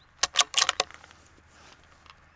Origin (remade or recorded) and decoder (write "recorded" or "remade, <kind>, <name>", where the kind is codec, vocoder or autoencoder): recorded